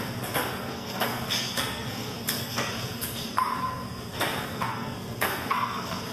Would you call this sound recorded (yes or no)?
no